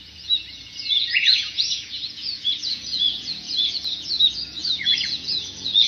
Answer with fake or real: fake